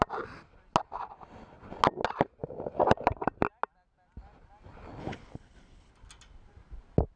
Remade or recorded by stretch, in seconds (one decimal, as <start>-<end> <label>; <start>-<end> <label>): 0.0-5.0 recorded; 5.0-5.9 remade; 5.9-7.2 recorded